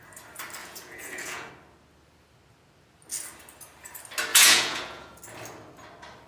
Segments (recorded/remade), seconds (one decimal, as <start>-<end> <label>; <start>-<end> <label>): 0.0-0.6 recorded; 0.6-1.5 remade; 1.5-4.3 recorded; 4.3-5.2 remade; 5.2-6.3 recorded